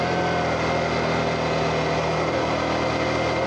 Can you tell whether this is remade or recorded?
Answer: recorded